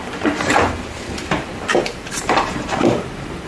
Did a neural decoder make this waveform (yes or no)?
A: yes